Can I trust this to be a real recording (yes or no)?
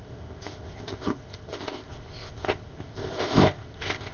no